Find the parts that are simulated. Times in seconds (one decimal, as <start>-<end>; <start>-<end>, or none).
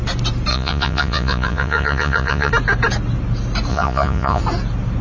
0.5-2.5; 3.7-4.4